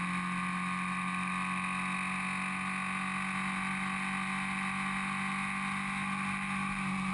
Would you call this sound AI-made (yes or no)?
no